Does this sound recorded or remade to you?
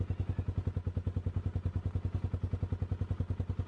recorded